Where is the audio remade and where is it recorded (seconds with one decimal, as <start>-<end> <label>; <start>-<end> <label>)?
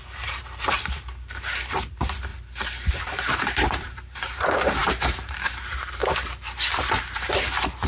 0.0-2.3 remade; 2.3-2.9 recorded; 2.9-6.0 remade; 6.0-6.9 recorded; 6.9-7.9 remade